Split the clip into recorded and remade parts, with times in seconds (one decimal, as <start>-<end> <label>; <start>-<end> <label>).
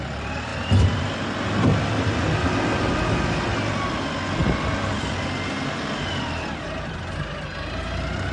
0.0-8.3 recorded